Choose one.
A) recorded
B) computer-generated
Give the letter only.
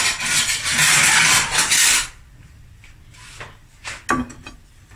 A